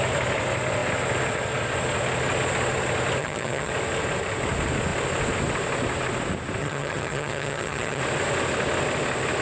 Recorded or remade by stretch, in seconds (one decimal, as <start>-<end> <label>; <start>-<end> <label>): 0.0-3.2 recorded; 3.2-3.7 remade; 3.7-6.6 recorded; 6.6-8.0 remade; 8.0-9.4 recorded